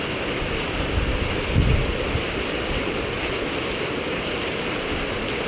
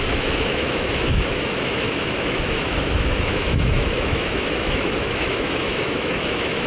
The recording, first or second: first